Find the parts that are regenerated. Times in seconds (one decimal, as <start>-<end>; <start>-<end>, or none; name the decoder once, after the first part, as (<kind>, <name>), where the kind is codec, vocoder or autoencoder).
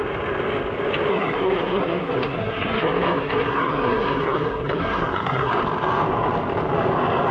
1.1-5.5 (codec, SNAC)